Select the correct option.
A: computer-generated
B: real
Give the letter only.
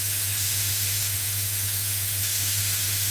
A